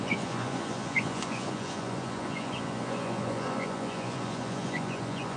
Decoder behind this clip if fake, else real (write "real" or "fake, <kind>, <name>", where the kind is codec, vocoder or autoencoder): fake, vocoder, Vocos